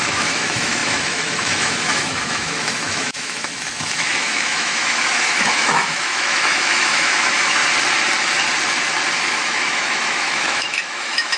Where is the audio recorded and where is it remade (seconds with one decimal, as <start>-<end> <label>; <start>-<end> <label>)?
0.0-7.6 remade; 7.6-9.2 recorded; 9.2-11.4 remade